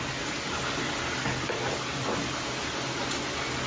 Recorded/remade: recorded